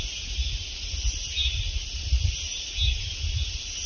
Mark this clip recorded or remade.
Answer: recorded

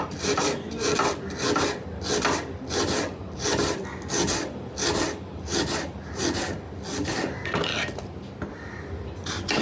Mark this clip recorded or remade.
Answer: recorded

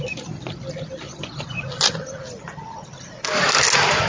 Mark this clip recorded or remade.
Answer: recorded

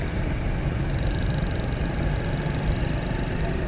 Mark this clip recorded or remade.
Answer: recorded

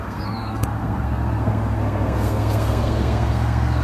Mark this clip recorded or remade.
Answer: remade